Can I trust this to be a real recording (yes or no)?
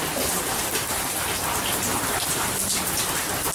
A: no